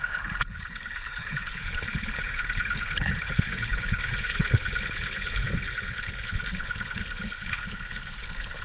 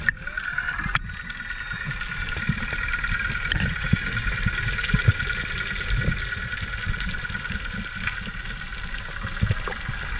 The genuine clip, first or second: second